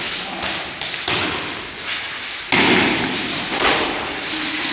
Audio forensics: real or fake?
real